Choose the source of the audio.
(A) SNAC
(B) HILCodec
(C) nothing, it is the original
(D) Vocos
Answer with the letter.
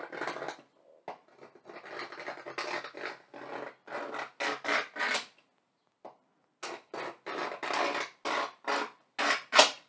C